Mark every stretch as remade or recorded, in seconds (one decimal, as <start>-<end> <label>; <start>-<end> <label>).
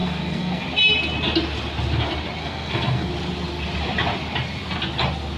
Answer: 0.0-0.6 remade; 0.6-2.4 recorded; 2.4-3.1 remade; 3.1-5.4 recorded